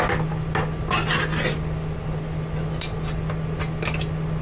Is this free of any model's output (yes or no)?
yes